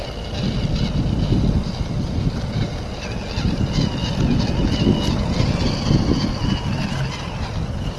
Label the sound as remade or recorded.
recorded